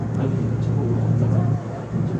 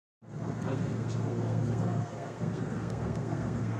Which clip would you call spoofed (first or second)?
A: second